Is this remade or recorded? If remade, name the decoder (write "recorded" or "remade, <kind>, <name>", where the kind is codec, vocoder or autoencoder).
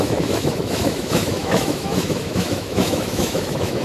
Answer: remade, autoencoder, DAC-VAE